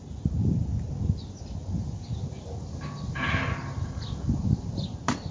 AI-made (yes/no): no